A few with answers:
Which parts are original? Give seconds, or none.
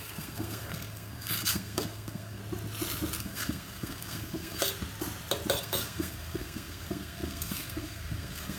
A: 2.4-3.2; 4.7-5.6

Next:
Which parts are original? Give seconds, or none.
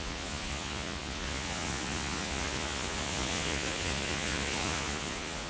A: none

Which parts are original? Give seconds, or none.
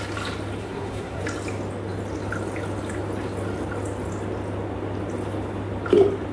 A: 0.0-0.6; 1.2-6.3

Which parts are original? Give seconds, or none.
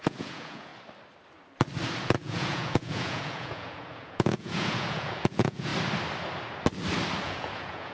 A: 0.7-2.0; 5.7-7.2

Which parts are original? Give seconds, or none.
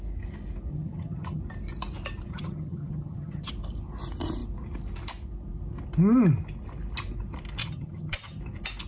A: 0.0-0.7; 1.4-2.3; 3.5-7.6; 8.4-8.9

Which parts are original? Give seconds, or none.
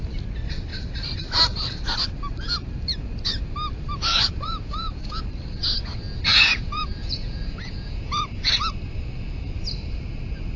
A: 0.0-4.1; 5.2-6.3; 8.5-10.6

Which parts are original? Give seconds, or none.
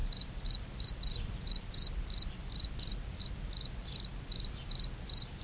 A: 3.2-5.4